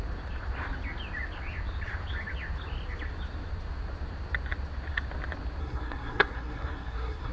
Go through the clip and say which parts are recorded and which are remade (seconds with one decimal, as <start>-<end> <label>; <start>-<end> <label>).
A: 0.0-5.6 recorded; 5.6-7.3 remade